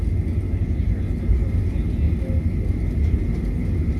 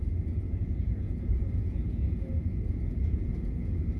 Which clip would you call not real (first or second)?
second